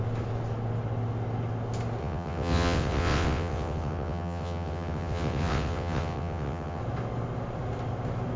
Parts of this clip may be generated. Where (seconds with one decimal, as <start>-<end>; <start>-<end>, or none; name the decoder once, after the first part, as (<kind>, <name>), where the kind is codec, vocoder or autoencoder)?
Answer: 2.0-6.8 (vocoder, WaveNeXt)